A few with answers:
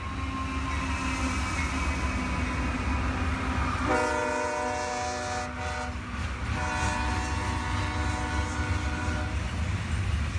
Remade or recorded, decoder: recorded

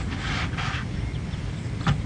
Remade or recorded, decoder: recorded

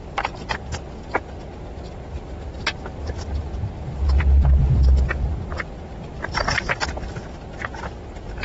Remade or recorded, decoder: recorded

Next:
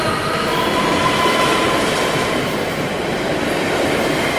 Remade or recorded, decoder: remade, vocoder, BigVGAN v2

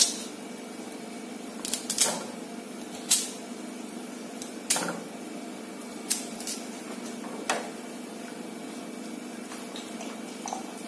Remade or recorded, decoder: recorded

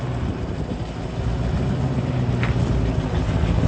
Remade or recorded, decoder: recorded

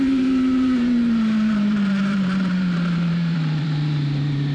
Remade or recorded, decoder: remade, vocoder, BigVGAN v2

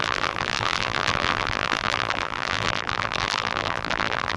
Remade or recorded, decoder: remade, vocoder, BigVGAN v2